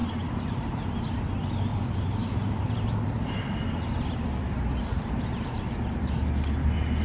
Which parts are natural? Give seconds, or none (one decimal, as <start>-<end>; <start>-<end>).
0.7-1.7; 5.2-7.0